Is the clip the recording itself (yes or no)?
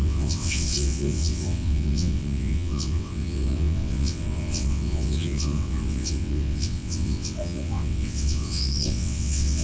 no